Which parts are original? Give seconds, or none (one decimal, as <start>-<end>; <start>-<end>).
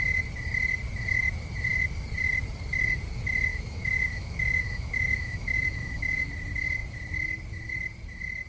0.0-3.5; 6.3-8.5